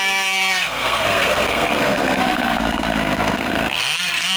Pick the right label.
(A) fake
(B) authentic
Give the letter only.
A